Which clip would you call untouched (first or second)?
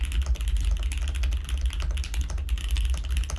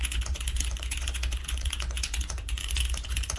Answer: first